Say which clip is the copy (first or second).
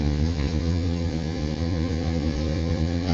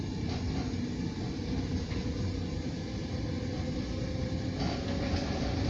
first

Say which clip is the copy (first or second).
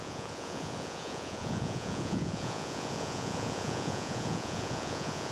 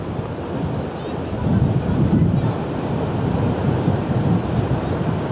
first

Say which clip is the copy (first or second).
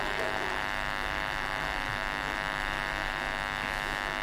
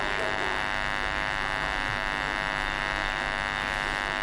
first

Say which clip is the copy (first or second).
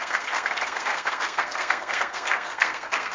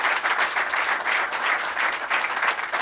first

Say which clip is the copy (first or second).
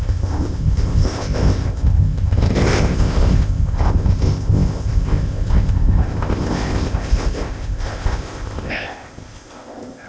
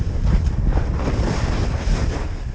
first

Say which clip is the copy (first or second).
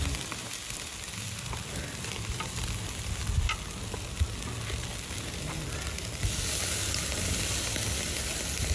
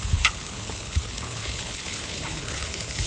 second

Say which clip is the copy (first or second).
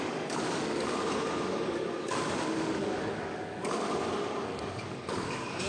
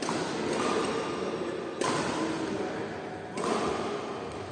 first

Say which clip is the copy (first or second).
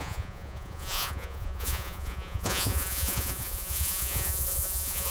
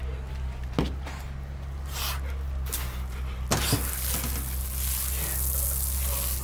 first